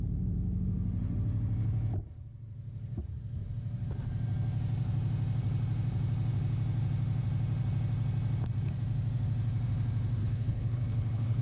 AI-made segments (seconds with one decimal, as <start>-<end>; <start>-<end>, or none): 10.2-11.4